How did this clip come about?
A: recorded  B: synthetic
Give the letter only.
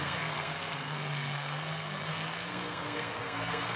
B